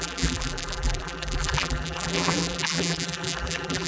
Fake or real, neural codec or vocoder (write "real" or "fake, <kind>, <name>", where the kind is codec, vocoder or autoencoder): fake, vocoder, BigVGAN v2